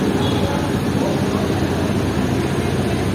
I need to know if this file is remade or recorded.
recorded